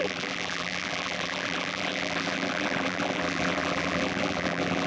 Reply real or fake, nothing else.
fake